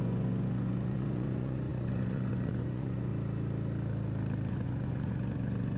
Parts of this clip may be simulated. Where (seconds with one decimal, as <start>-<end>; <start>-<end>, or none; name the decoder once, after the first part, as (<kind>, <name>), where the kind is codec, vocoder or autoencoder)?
0.0-3.1 (vocoder, Vocos); 4.5-5.8